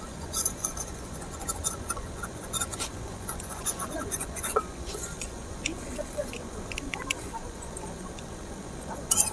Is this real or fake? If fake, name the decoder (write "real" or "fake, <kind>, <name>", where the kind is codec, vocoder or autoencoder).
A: fake, vocoder, Vocos